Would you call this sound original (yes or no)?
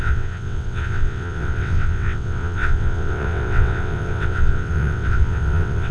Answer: no